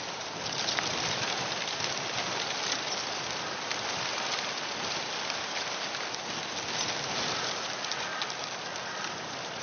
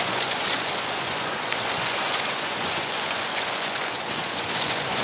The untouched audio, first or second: first